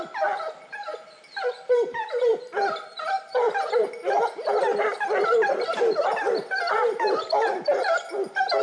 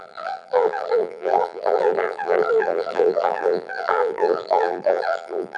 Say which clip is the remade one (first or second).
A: second